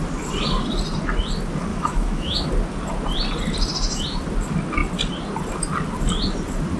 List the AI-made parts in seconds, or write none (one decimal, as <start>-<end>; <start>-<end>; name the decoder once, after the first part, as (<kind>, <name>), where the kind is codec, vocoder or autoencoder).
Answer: 1.7-2.5 (autoencoder, DAC-VAE)